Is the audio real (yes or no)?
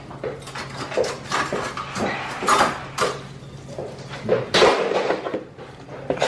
yes